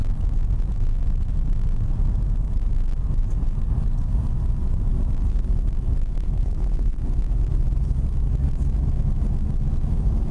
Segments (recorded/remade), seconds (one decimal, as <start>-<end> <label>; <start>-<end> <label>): 0.0-6.2 recorded; 6.2-7.0 remade; 7.0-10.3 recorded